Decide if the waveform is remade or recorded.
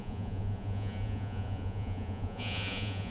remade